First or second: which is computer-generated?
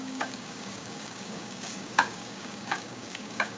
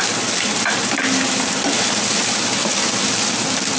first